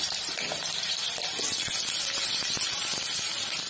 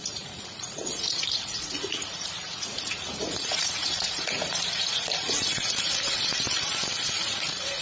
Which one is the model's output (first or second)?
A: second